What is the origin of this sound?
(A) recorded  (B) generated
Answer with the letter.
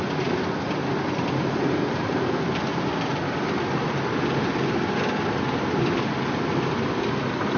A